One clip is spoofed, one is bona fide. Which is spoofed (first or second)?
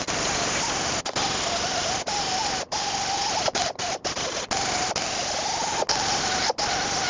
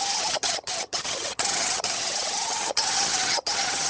second